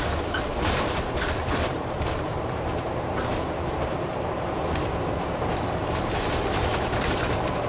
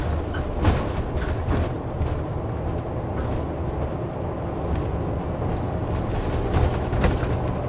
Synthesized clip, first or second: first